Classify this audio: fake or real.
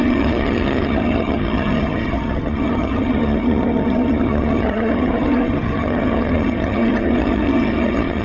fake